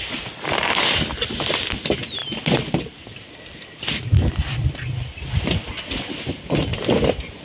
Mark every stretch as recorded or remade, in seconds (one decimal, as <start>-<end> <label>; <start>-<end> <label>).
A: 0.0-7.4 recorded